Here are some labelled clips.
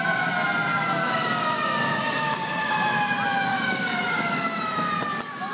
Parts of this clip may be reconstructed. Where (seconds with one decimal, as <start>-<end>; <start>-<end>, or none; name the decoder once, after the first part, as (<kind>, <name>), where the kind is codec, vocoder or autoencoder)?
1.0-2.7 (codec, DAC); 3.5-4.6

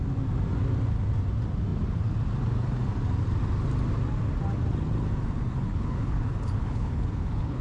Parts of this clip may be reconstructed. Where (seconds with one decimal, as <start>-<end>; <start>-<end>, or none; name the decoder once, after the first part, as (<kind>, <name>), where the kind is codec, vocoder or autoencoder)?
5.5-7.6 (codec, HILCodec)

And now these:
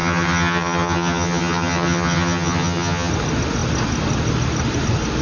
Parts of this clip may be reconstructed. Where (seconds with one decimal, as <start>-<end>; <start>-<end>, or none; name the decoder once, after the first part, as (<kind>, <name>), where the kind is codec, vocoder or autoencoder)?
0.0-3.1 (vocoder, HiFi-GAN)

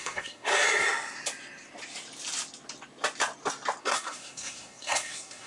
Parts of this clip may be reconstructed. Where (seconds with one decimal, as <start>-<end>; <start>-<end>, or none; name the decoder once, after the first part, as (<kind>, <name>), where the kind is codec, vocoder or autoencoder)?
0.0-0.5 (codec, SNAC); 3.8-5.5